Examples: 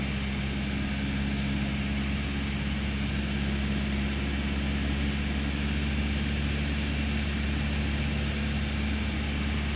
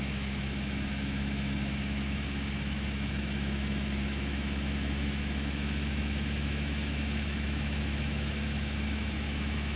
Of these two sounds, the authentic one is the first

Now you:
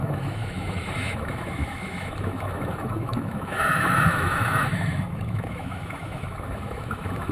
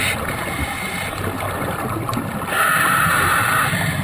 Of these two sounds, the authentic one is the second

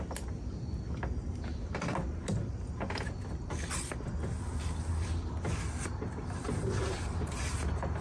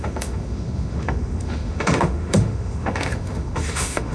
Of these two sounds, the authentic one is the first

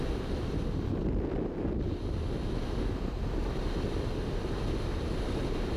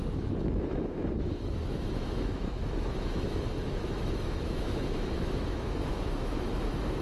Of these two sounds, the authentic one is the first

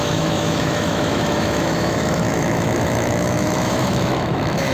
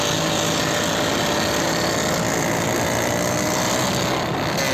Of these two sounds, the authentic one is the second